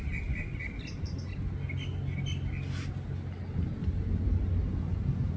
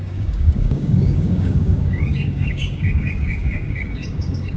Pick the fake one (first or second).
second